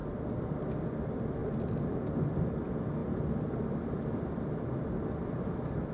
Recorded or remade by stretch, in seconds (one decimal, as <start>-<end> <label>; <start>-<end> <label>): 0.0-0.6 remade; 0.6-1.4 recorded; 1.4-2.0 remade; 2.0-5.9 recorded